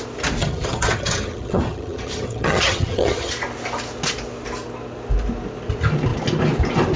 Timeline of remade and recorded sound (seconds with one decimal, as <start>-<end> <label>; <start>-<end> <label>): 0.0-0.4 recorded; 0.4-3.3 remade; 3.3-7.0 recorded